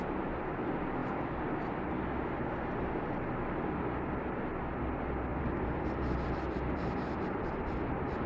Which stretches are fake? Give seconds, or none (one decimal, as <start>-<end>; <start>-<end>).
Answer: 5.3-8.3